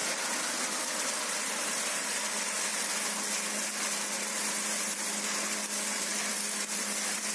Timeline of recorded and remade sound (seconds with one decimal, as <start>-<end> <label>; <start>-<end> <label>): 0.0-0.9 recorded; 0.9-2.7 remade; 2.7-4.3 recorded; 4.3-7.3 remade